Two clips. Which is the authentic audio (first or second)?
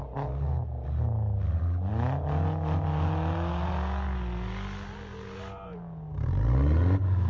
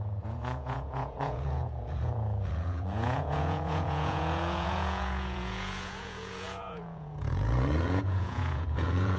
first